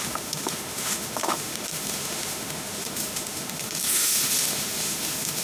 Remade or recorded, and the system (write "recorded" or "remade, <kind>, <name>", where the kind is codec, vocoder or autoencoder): remade, autoencoder, DAC-VAE